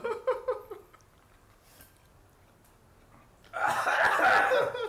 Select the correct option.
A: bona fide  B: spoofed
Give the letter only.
A